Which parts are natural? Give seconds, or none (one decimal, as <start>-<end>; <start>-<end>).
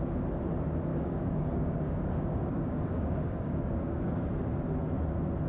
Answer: 0.0-0.9; 4.2-5.5